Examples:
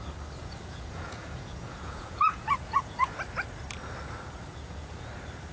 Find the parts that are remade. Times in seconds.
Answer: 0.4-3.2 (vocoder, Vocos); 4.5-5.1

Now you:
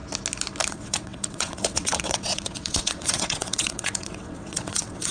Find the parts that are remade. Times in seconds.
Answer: 0.7-5.1 (vocoder, WaveNeXt)

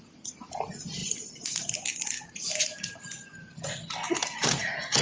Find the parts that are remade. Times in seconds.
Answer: none

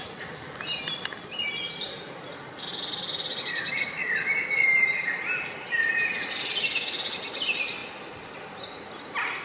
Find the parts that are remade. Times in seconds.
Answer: none

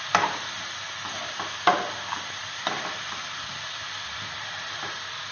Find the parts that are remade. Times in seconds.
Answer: none

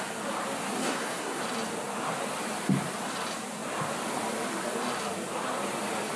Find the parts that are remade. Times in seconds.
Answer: 0.8-1.4 (codec, SNAC)

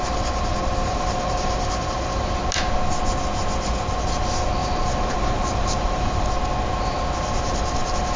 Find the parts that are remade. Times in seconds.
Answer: 0.8-2.3 (vocoder, BigVGAN v2); 4.6-6.3